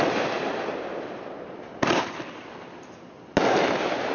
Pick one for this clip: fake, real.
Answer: real